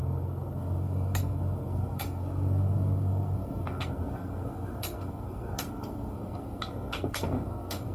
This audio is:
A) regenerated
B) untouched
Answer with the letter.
A